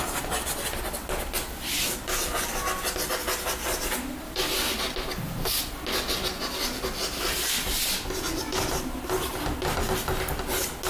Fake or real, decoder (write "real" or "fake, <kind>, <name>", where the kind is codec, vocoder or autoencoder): real